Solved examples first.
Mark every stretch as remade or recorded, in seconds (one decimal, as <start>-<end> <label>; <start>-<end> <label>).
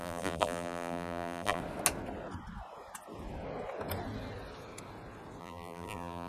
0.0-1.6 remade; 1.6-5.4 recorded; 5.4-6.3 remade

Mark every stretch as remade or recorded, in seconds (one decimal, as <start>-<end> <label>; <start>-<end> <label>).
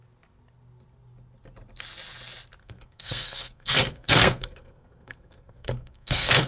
0.0-2.6 recorded; 2.6-6.5 remade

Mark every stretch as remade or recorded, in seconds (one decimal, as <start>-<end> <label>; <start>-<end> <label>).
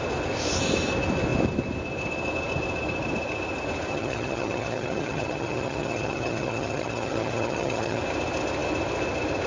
0.0-3.9 recorded; 3.9-8.0 remade; 8.0-9.5 recorded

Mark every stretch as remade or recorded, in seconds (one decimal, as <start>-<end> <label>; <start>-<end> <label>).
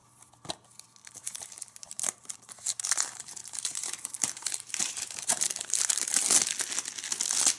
0.0-1.1 recorded; 1.1-6.2 remade; 6.2-7.6 recorded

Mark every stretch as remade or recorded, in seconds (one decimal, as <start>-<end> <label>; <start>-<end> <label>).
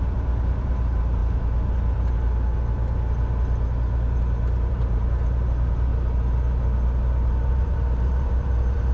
0.0-1.2 remade; 1.2-4.7 recorded; 4.7-5.9 remade; 5.9-7.5 recorded; 7.5-8.9 remade